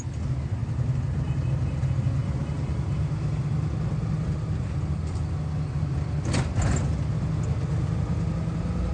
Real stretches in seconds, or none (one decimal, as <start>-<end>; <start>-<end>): 0.0-8.9